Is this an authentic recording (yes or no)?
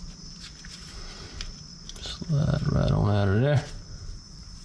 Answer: yes